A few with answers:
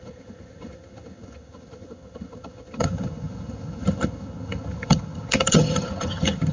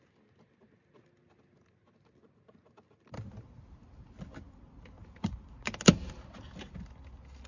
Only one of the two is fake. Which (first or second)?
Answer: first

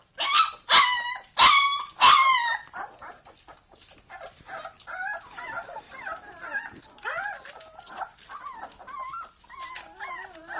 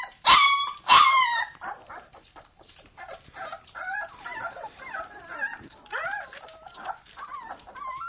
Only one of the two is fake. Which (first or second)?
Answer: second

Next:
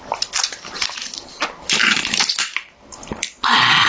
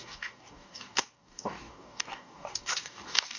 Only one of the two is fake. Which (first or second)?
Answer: second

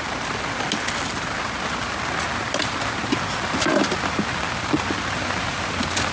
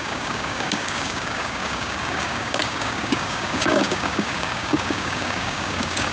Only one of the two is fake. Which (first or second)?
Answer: second